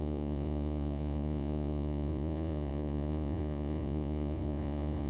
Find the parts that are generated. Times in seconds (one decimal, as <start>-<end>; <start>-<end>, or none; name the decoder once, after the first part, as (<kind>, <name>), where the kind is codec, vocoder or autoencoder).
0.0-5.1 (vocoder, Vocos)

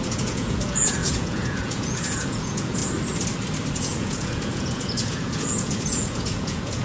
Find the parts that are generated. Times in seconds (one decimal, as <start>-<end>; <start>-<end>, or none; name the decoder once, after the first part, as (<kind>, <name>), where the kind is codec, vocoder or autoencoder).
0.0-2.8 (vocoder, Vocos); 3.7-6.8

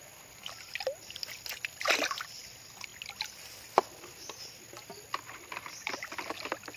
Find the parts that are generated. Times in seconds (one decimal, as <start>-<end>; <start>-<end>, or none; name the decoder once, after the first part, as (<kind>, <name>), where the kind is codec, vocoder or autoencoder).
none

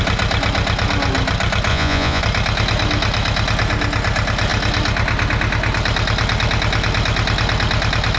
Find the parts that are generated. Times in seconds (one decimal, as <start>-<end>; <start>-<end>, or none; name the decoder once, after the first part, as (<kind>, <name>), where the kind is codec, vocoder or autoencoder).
1.7-2.2 (vocoder, Vocos)

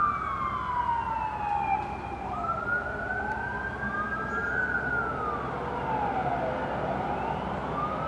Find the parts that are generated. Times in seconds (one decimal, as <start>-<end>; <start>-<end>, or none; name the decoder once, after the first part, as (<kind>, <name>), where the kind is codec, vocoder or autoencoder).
none

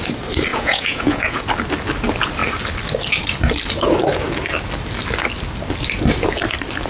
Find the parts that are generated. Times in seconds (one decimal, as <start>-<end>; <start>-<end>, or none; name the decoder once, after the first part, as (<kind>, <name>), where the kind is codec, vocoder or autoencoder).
0.5-1.4 (vocoder, Vocos)

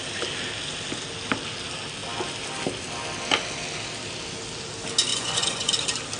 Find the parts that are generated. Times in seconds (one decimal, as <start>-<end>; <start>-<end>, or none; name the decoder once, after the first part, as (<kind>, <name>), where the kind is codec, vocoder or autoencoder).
5.1-5.7 (vocoder, Vocos)

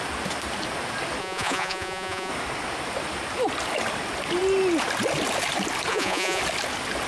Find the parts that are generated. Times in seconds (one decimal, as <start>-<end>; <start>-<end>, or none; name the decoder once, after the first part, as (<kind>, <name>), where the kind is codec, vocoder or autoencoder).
1.2-2.3 (vocoder, Vocos); 5.9-6.4